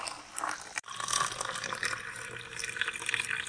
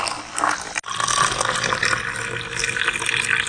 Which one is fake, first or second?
first